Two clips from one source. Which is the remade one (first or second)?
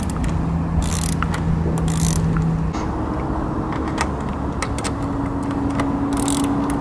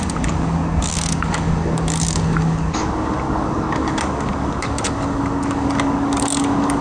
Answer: second